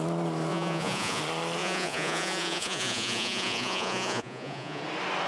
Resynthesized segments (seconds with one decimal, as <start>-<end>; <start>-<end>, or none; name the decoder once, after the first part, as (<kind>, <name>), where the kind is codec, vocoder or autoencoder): 0.5-1.2 (vocoder, Vocos); 1.6-4.8